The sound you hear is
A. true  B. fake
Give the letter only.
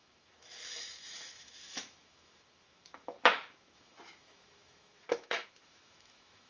B